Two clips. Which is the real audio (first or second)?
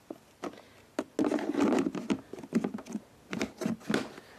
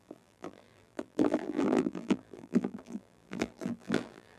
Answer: first